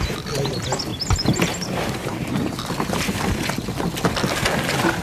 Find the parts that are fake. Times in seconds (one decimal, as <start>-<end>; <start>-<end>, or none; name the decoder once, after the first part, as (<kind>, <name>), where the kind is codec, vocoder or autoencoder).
0.9-2.6 (vocoder, BigVGAN v2)

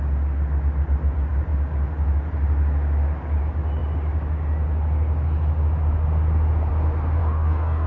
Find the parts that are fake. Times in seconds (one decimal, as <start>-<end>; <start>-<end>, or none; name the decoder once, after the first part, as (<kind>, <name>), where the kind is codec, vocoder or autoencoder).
7.2-7.9 (codec, DAC)

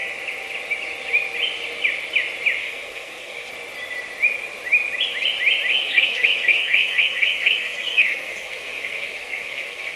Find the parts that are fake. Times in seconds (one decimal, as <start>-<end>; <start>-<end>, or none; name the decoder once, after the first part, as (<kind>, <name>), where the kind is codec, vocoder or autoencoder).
2.6-3.5 (codec, SNAC); 5.7-10.0